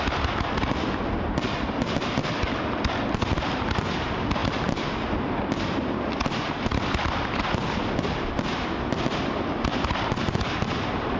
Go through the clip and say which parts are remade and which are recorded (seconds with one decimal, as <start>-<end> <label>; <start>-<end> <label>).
0.0-11.2 recorded